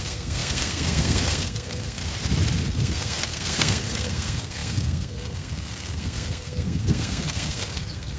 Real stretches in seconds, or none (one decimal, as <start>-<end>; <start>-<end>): 2.0-2.7